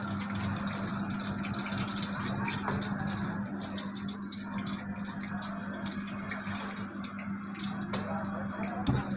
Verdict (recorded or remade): recorded